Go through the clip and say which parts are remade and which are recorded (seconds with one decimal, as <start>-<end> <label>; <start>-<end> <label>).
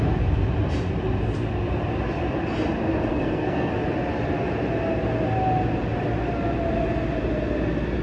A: 0.0-3.1 recorded; 3.1-3.7 remade; 3.7-8.0 recorded